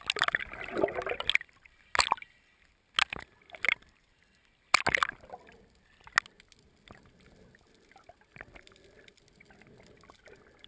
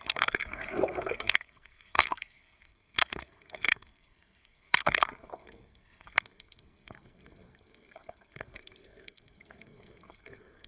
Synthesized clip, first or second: second